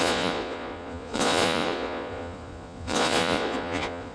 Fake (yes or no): yes